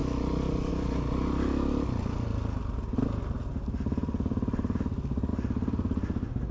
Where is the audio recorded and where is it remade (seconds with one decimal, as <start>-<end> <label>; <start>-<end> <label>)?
0.0-6.5 recorded